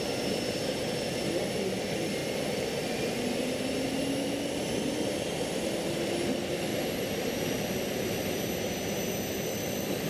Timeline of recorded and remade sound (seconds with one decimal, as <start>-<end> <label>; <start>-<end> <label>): 0.0-2.2 recorded; 2.2-3.2 remade; 3.2-6.7 recorded; 6.7-8.4 remade; 8.4-10.1 recorded